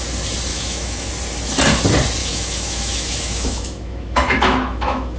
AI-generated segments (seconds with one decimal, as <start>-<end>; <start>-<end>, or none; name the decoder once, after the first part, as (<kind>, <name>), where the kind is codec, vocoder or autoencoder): 0.5-1.1 (autoencoder, DAC-VAE); 2.2-5.2